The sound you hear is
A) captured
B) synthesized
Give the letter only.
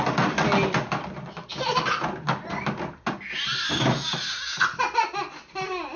A